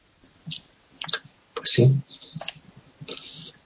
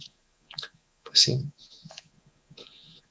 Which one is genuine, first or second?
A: first